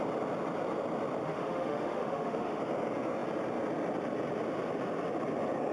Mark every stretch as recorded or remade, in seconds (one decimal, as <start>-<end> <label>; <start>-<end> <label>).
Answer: 0.0-1.2 recorded; 1.2-2.6 remade; 2.6-5.7 recorded